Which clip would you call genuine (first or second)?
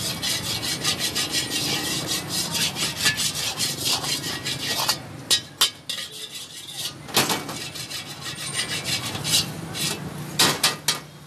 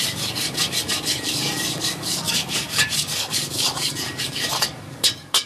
first